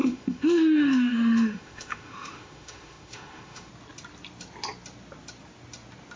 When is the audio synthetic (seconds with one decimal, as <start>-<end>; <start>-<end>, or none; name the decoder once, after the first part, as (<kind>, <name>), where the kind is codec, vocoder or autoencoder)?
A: 0.0-3.7 (autoencoder, DAC-VAE)